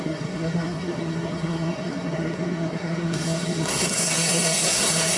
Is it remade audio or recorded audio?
remade